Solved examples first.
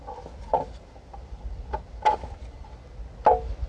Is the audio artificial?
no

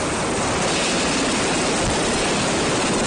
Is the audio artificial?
no